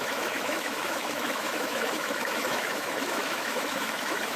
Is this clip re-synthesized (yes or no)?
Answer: yes